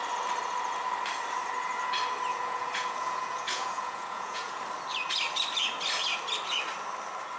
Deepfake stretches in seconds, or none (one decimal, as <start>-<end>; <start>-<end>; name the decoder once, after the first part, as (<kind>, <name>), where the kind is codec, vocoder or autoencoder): 2.3-4.6 (vocoder, Vocos)